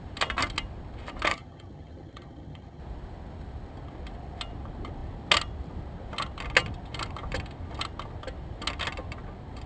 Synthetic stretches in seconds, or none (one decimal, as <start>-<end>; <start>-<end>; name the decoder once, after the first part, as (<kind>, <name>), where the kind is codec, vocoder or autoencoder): 1.3-2.8 (vocoder, HiFi-GAN)